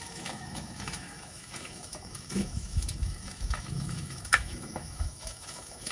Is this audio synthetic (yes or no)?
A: yes